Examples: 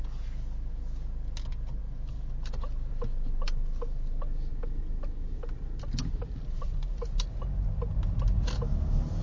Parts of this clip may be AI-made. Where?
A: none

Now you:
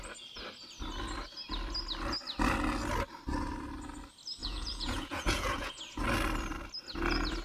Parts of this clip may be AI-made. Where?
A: 4.4-5.8 (vocoder, Vocos)